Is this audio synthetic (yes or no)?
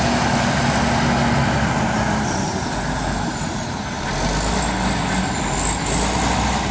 no